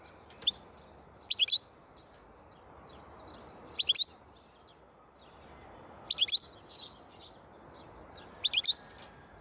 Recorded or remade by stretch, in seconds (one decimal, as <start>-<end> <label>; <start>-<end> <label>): 0.0-9.4 recorded